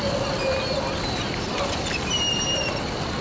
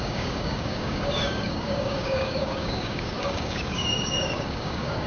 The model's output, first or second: second